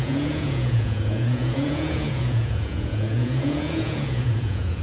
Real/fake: fake